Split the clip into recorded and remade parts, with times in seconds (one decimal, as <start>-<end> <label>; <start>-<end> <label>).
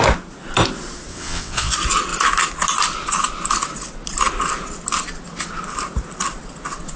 0.0-1.1 recorded; 1.1-1.7 remade; 1.7-7.0 recorded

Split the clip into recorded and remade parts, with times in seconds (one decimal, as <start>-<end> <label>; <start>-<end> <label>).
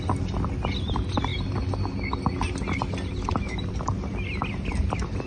0.0-5.3 recorded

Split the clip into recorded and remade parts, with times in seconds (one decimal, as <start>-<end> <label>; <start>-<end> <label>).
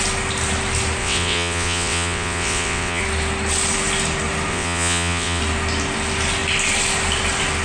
0.0-1.0 recorded; 1.0-3.0 remade; 3.0-4.5 recorded; 4.5-5.4 remade; 5.4-7.6 recorded